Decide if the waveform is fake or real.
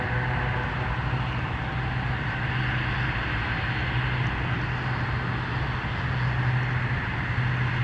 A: real